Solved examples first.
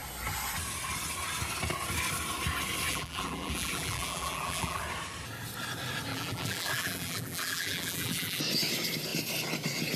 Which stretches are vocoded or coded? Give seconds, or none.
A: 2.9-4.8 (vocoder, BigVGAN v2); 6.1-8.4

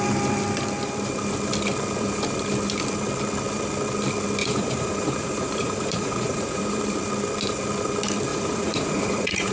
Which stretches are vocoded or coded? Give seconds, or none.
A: 4.4-6.8 (vocoder, Vocos); 8.3-9.5